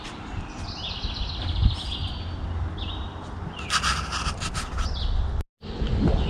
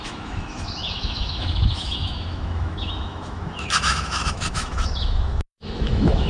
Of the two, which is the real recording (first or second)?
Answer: first